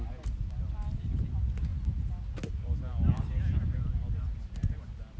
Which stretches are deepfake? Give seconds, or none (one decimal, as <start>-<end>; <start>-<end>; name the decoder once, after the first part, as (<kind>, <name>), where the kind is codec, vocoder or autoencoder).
none